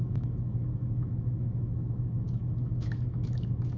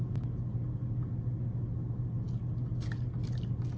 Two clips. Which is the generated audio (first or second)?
first